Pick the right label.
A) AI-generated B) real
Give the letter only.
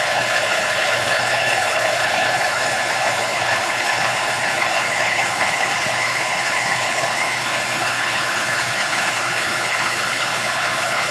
A